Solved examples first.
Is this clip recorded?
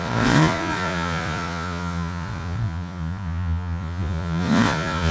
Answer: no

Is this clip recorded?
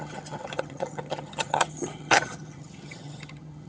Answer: no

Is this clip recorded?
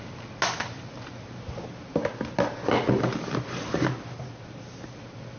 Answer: yes